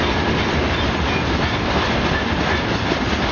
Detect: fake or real real